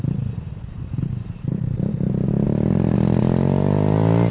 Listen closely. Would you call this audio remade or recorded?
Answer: recorded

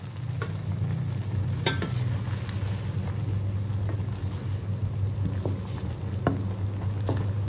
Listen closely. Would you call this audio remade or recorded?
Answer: recorded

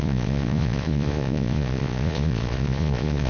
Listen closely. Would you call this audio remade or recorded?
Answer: remade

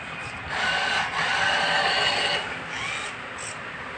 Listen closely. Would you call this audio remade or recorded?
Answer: recorded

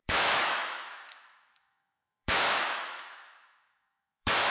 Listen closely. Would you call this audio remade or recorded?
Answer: remade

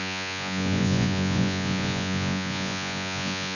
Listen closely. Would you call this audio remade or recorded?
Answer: remade